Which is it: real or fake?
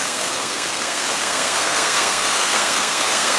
fake